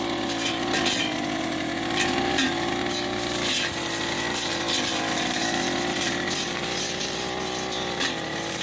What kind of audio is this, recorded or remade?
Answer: recorded